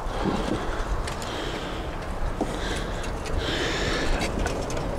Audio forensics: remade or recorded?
recorded